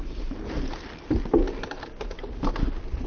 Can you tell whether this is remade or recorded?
recorded